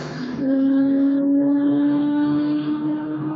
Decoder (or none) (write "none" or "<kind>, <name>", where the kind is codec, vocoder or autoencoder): codec, DAC